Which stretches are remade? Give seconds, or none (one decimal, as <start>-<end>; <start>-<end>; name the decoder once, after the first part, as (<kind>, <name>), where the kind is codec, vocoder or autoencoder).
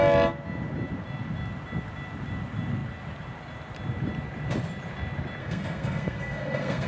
5.4-6.9 (codec, SNAC)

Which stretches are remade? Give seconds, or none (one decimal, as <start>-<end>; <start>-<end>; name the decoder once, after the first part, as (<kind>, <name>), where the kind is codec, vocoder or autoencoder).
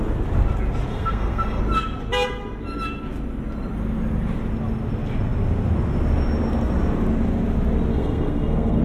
0.9-1.6 (codec, SNAC); 7.9-8.8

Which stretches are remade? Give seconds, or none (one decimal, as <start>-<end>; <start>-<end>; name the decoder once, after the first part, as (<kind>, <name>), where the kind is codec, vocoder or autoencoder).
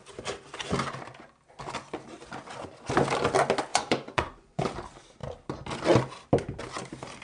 3.7-4.6 (vocoder, Vocos)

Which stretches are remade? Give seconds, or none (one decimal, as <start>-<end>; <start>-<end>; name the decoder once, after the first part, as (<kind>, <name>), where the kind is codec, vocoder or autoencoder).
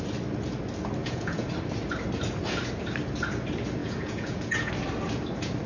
1.0-1.5 (vocoder, Vocos); 3.8-4.7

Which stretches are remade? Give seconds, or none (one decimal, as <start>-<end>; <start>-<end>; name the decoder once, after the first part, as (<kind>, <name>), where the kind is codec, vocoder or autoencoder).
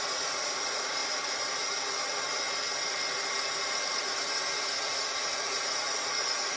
0.0-1.0 (vocoder, Vocos); 5.0-6.6